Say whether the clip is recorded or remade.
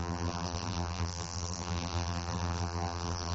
remade